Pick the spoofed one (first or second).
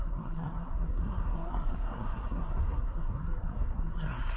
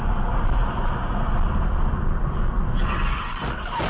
first